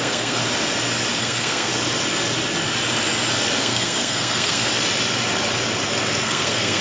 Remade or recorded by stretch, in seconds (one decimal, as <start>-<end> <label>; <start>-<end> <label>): 0.0-0.4 remade; 0.4-1.2 recorded; 1.2-1.7 remade; 1.7-3.6 recorded; 3.6-4.7 remade; 4.7-6.2 recorded; 6.2-6.8 remade